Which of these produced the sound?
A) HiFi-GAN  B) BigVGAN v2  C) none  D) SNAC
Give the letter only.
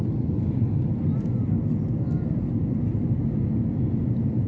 C